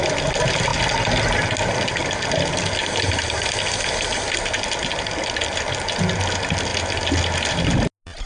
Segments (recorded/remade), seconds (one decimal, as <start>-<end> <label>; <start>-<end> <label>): 0.0-8.3 recorded